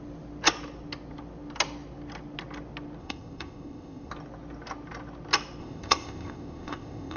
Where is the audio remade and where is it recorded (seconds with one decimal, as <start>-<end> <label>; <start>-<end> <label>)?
0.0-3.0 recorded; 3.0-4.1 remade; 4.1-5.6 recorded; 5.6-7.2 remade